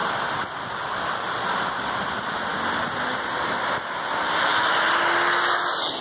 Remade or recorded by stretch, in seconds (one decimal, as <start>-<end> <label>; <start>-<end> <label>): 0.0-6.0 recorded